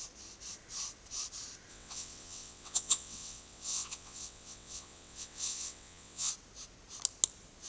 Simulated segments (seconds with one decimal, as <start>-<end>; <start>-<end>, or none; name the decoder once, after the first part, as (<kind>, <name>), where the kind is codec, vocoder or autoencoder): 1.7-6.3 (vocoder, WaveNeXt)